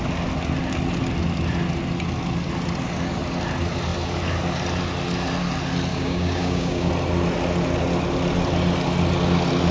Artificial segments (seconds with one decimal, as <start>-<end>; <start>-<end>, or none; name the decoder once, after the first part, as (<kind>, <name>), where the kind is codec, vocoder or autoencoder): 5.9-6.9 (codec, DAC)